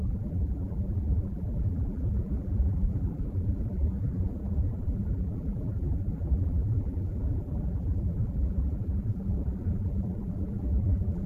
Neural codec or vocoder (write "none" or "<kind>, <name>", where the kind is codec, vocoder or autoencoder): vocoder, BigVGAN v2